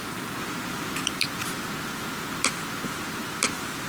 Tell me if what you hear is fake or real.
real